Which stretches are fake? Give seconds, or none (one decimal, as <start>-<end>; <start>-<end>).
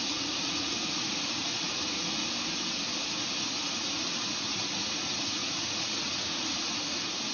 0.0-2.2; 3.4-7.3